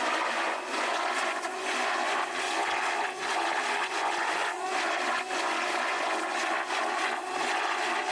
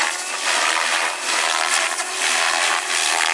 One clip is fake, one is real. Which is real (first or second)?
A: second